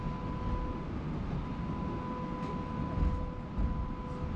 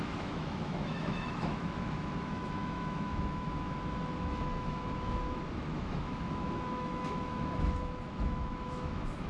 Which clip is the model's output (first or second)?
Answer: second